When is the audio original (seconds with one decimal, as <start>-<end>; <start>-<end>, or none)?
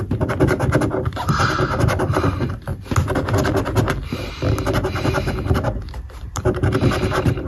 2.7-4.3